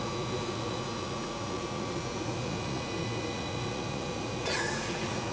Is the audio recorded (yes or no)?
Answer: no